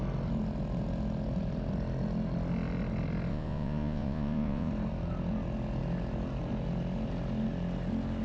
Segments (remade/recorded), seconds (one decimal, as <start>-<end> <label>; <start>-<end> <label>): 0.0-3.3 recorded; 3.3-4.7 remade; 4.7-8.2 recorded